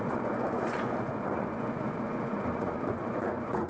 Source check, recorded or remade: remade